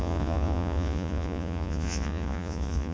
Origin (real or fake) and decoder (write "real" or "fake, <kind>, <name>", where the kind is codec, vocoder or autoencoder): fake, vocoder, Vocos